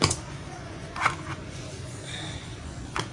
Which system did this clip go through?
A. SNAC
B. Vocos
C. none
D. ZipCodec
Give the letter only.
B